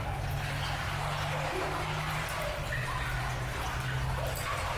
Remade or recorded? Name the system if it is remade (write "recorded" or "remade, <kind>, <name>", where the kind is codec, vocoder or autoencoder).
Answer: recorded